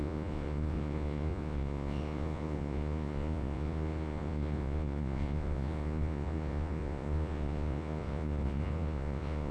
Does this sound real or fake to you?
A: fake